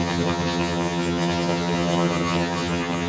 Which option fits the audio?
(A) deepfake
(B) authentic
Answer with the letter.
A